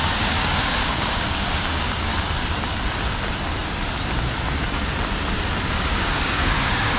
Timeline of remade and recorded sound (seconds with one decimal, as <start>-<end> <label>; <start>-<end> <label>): 0.0-2.1 remade; 2.1-5.6 recorded; 5.6-7.0 remade